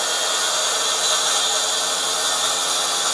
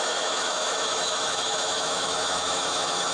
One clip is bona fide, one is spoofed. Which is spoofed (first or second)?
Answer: second